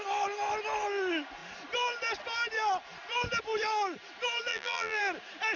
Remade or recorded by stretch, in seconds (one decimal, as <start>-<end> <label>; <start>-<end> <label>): 0.0-4.5 recorded; 4.5-5.0 remade; 5.0-5.6 recorded